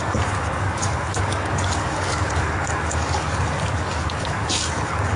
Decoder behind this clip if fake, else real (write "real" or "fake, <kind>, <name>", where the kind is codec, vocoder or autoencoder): fake, codec, DAC